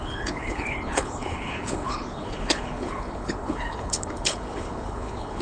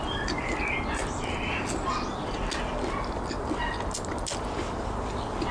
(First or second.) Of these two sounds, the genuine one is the second